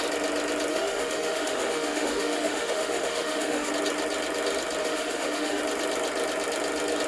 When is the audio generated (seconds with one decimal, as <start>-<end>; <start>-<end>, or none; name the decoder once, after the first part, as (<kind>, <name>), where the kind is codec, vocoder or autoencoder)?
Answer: 0.7-3.7 (autoencoder, DAC-VAE); 4.8-5.6